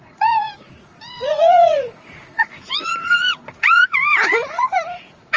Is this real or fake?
fake